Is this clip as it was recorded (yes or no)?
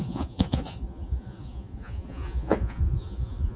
no